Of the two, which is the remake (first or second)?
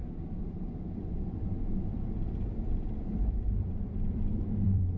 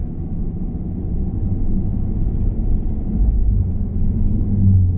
first